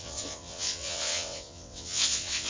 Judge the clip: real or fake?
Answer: fake